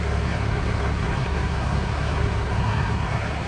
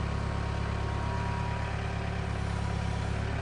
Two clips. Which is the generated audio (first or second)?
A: first